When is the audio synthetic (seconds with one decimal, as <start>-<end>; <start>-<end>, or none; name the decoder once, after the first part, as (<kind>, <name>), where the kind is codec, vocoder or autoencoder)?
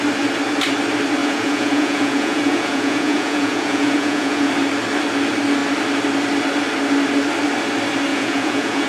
1.2-4.5 (vocoder, Vocos); 8.1-8.9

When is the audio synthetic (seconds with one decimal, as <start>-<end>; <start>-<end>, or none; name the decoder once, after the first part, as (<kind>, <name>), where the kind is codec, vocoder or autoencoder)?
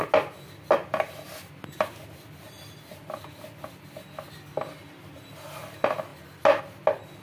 none